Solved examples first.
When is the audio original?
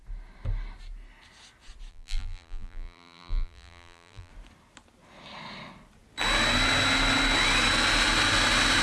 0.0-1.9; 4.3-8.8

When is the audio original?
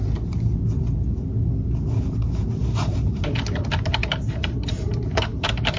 0.0-2.6; 3.2-4.0